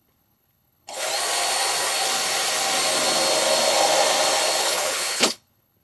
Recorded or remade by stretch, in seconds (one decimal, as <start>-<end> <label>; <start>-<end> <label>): 0.0-1.1 remade; 1.1-4.6 recorded; 4.6-5.8 remade